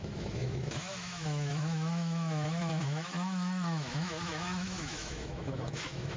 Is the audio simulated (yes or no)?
yes